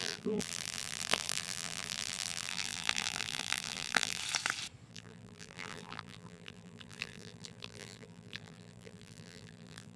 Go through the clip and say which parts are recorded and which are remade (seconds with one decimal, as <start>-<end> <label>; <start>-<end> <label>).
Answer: 0.0-4.2 remade; 4.2-4.9 recorded; 4.9-10.0 remade